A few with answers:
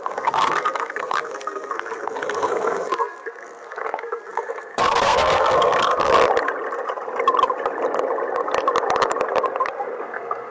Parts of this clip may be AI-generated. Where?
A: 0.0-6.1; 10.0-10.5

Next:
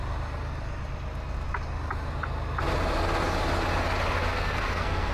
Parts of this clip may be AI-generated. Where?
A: 4.3-5.1

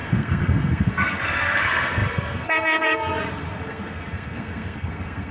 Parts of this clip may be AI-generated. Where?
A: 0.0-5.3

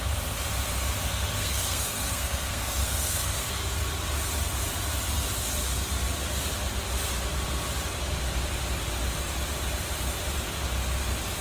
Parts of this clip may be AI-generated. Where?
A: 1.4-3.5

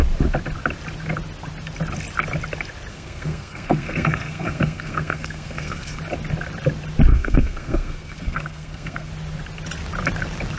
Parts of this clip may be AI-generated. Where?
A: 2.9-6.0; 7.1-9.1